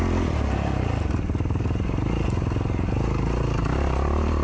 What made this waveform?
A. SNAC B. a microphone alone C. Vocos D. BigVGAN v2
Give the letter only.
B